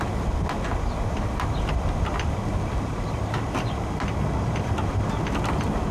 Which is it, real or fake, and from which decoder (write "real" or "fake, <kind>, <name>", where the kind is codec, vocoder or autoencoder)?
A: real